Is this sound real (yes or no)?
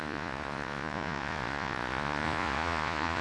no